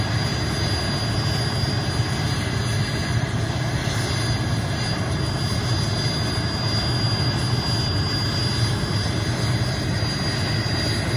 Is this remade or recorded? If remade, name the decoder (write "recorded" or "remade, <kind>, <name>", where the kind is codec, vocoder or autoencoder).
recorded